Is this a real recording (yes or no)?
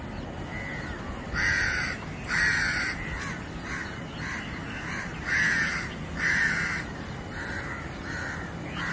yes